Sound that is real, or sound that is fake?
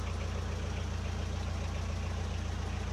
real